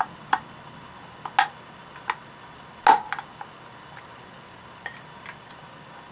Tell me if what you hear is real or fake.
real